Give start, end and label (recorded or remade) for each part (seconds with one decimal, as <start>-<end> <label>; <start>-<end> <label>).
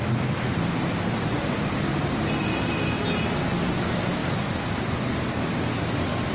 0.0-6.3 recorded